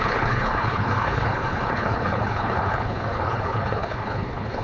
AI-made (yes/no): yes